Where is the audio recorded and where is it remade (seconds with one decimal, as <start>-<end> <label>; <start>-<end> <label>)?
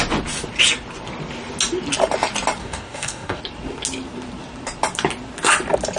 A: 0.0-2.6 recorded; 2.6-3.4 remade; 3.4-6.0 recorded